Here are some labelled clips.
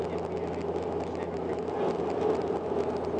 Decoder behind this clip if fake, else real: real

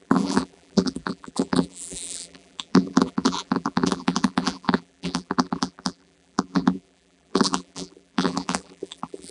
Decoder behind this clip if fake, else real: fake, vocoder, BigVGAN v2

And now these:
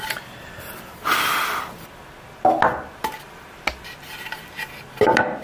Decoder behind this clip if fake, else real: real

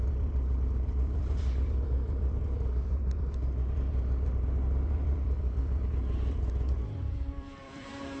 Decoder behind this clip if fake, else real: fake, vocoder, BigVGAN v2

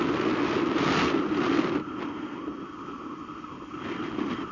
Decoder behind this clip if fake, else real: real